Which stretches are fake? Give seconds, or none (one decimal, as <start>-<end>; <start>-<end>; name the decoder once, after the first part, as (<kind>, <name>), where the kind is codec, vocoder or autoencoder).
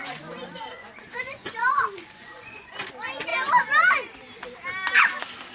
0.0-2.9 (vocoder, Vocos)